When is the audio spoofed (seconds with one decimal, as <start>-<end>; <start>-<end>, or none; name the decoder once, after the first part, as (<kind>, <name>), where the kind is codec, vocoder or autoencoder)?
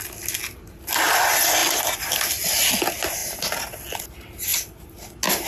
none